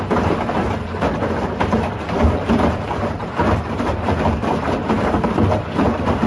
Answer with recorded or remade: remade